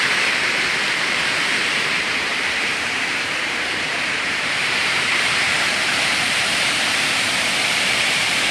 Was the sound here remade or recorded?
remade